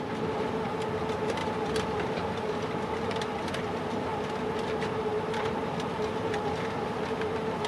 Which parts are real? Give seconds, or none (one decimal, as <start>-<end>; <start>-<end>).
0.0-1.4; 2.6-7.7